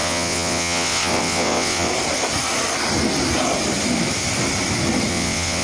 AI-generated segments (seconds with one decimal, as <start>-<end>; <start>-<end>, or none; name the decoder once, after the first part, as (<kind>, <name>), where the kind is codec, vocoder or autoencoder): 0.0-1.9 (vocoder, WaveNeXt); 5.1-5.6